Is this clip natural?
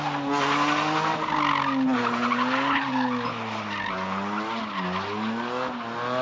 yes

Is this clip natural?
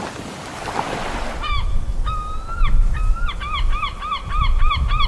yes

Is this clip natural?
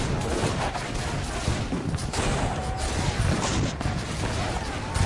yes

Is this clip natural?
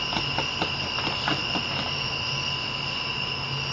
yes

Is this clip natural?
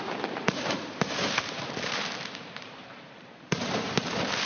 no